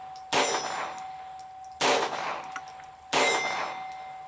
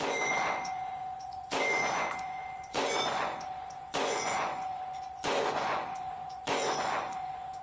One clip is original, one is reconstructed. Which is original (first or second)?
first